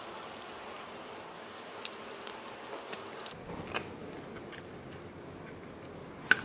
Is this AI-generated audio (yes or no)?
no